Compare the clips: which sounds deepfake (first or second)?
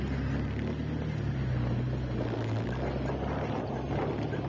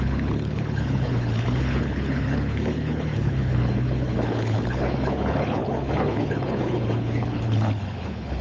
second